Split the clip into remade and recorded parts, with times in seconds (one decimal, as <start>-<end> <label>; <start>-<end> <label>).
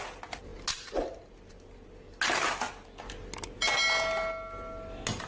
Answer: 0.0-5.3 recorded